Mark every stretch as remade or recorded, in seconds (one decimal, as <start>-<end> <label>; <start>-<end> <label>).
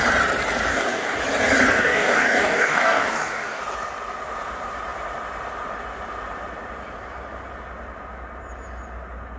0.0-0.7 recorded; 0.7-1.2 remade; 1.2-1.7 recorded; 1.7-3.6 remade; 3.6-9.4 recorded